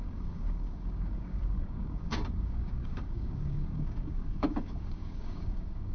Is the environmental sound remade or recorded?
remade